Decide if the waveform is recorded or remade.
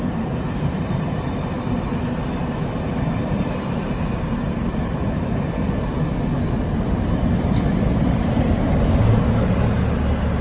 recorded